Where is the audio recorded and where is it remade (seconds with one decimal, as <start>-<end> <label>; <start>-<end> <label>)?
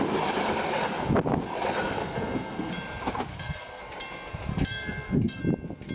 0.0-2.0 recorded; 2.0-2.7 remade; 2.7-3.3 recorded; 3.3-3.8 remade; 3.8-4.5 recorded; 4.5-5.4 remade; 5.4-5.9 recorded